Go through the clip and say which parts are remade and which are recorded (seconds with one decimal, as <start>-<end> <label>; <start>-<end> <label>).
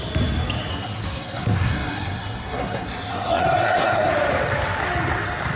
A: 0.0-0.7 recorded; 0.7-4.1 remade; 4.1-5.6 recorded